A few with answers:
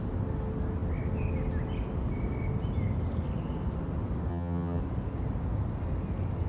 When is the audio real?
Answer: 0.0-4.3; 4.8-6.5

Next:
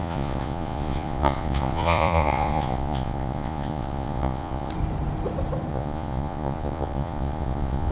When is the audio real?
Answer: 4.7-5.7

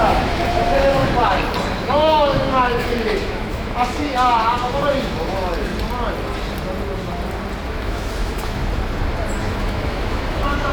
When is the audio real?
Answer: 1.0-1.7; 5.7-7.7; 8.6-9.4

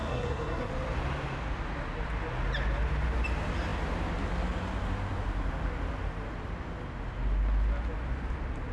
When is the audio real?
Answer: 0.7-8.7

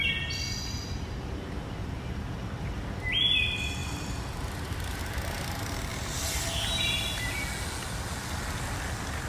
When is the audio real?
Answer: 0.0-3.8; 5.0-5.9; 6.8-9.3

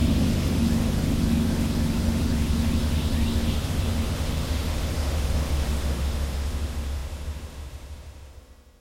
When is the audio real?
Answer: none

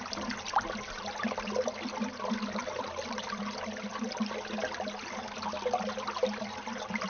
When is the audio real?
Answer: 0.0-7.1